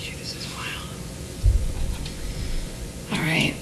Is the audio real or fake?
fake